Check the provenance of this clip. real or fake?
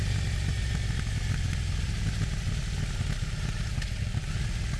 real